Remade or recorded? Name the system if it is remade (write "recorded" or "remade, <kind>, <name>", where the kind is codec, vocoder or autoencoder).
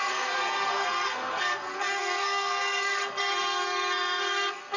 remade, codec, SNAC